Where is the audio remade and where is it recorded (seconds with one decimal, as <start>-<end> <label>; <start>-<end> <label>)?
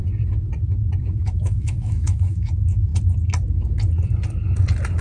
0.0-1.0 recorded; 1.0-2.9 remade; 2.9-5.0 recorded